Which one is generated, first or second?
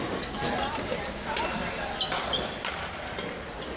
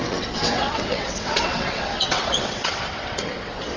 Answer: second